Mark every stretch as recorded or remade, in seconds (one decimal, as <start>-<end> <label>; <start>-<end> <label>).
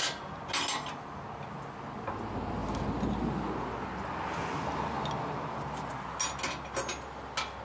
0.0-7.6 recorded